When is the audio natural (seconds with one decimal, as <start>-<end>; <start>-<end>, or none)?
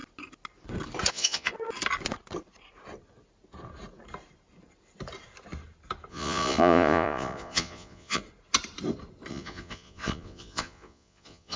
0.0-1.1; 1.5-6.1; 8.2-9.3